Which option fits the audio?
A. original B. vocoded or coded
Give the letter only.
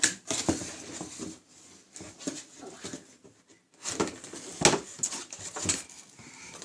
A